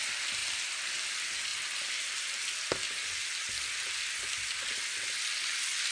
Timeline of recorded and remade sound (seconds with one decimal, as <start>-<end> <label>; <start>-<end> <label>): 0.0-5.9 recorded